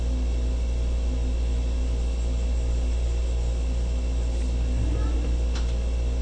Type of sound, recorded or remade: recorded